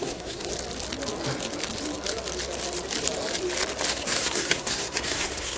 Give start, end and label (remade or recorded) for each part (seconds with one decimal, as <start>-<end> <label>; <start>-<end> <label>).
0.0-0.5 remade; 0.5-3.9 recorded; 3.9-5.6 remade